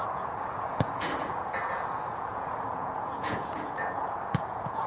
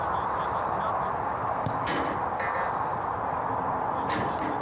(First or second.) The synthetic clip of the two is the first